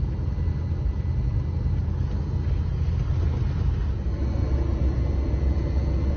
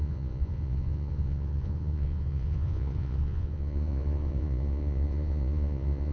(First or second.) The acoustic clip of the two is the first